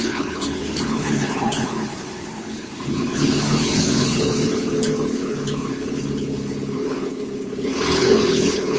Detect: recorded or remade remade